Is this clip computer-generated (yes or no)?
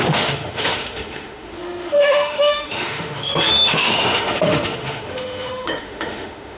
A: yes